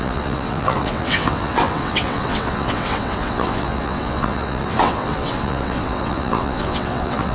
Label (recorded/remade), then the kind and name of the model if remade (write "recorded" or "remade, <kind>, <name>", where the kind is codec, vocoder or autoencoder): remade, vocoder, WaveNeXt